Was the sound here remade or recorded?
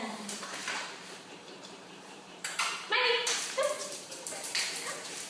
remade